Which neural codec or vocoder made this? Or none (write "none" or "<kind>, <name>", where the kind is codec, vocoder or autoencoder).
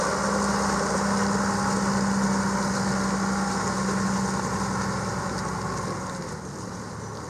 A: none